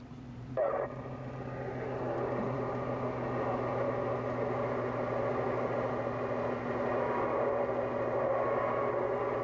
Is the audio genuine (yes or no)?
yes